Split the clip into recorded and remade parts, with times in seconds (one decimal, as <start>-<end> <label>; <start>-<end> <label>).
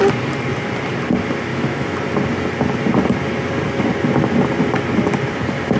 0.0-1.5 recorded; 1.5-2.0 remade; 2.0-5.8 recorded